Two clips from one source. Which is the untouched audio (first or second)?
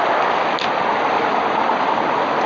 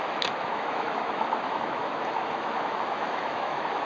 first